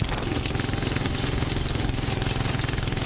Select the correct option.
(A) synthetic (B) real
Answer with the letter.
B